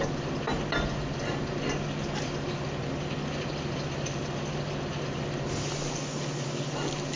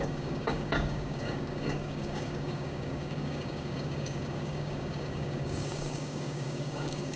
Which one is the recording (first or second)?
first